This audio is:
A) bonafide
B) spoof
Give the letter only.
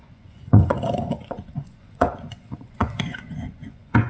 B